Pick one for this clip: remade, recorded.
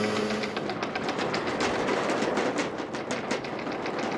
recorded